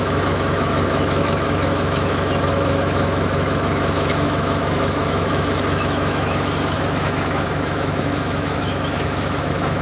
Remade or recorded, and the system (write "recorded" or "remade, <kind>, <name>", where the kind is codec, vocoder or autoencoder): remade, autoencoder, DAC-VAE